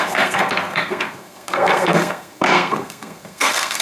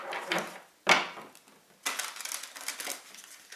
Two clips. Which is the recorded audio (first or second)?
second